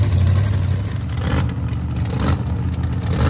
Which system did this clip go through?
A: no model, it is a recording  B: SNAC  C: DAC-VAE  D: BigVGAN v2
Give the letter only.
A